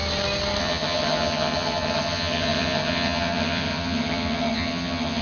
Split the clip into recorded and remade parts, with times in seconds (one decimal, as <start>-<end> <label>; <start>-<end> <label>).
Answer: 0.0-0.6 recorded; 0.6-5.2 remade